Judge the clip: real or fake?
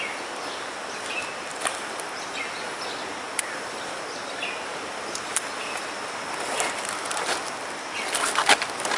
real